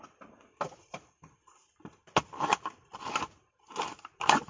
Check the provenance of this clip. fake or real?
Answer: fake